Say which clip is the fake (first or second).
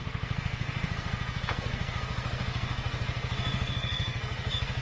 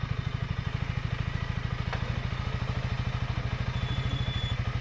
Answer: first